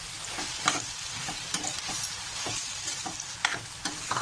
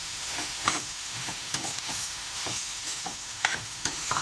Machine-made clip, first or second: second